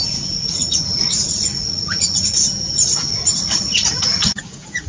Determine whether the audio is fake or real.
fake